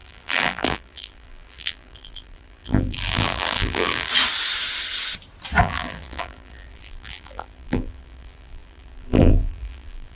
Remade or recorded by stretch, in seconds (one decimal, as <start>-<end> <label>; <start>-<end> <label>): 0.0-4.1 remade; 4.1-5.6 recorded; 5.6-10.2 remade